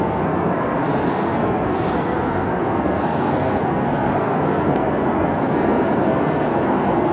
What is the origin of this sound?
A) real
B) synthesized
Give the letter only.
B